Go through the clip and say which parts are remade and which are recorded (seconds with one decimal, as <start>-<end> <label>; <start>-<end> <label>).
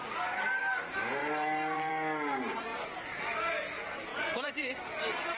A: 0.0-1.2 recorded; 1.2-1.9 remade; 1.9-4.1 recorded; 4.1-4.8 remade; 4.8-5.4 recorded